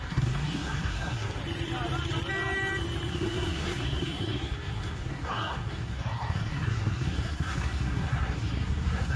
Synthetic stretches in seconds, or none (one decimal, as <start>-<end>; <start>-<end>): 0.0-1.4; 3.1-9.2